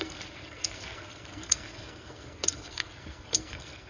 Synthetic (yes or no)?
yes